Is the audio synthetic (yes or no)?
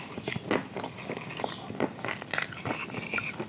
no